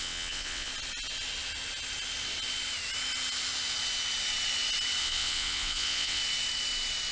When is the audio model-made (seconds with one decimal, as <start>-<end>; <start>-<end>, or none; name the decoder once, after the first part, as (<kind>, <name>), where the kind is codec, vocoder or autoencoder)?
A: 0.0-0.7 (vocoder, WaveNeXt); 5.0-6.2